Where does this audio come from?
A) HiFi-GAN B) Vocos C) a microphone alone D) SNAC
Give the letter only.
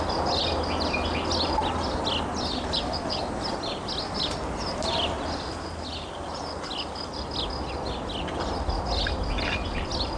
C